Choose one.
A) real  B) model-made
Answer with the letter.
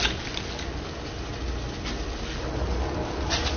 A